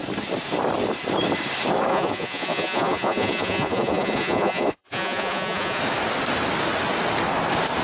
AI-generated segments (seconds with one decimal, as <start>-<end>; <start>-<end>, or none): 1.9-5.8

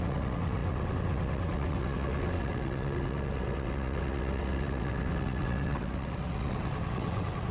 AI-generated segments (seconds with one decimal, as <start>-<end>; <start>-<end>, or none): 0.0-7.5

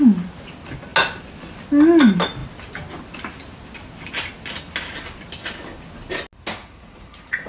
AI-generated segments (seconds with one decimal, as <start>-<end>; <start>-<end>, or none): 6.6-7.5